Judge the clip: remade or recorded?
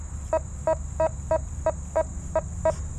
recorded